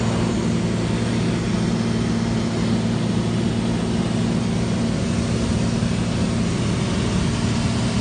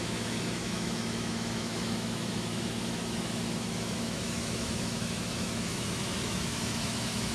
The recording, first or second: first